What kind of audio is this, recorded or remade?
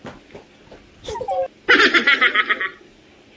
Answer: recorded